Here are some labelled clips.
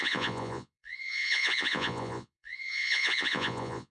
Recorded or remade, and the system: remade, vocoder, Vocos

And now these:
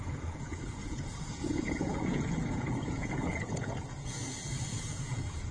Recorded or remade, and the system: remade, vocoder, Vocos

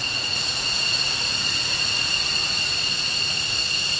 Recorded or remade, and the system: remade, vocoder, Vocos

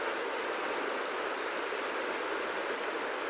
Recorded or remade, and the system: recorded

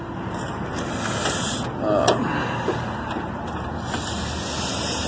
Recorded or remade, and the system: recorded